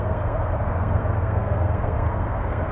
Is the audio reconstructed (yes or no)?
yes